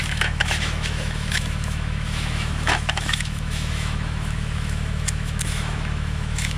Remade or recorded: remade